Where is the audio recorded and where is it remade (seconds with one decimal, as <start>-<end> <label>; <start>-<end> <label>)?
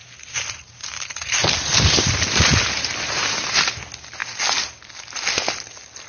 0.0-3.7 remade; 3.7-6.1 recorded